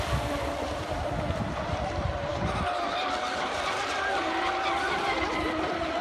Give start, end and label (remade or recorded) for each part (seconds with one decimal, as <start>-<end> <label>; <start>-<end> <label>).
0.0-6.0 recorded